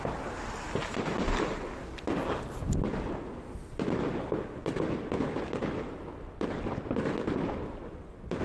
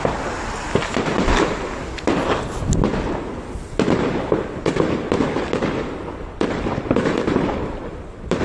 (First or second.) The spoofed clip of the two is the second